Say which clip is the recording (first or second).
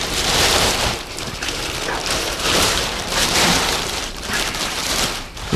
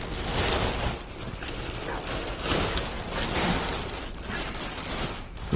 second